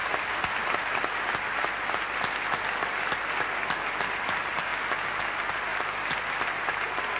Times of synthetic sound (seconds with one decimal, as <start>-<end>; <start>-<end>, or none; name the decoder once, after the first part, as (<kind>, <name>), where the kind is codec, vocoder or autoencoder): 4.2-4.7 (vocoder, BigVGAN v2); 5.2-5.7; 6.5-7.2